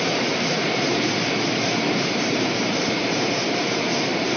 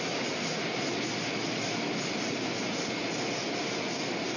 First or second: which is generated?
first